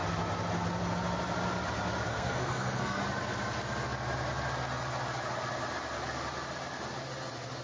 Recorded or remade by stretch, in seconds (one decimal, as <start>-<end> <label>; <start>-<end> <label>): 0.0-2.1 recorded; 2.1-3.0 remade; 3.0-7.6 recorded